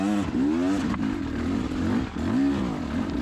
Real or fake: real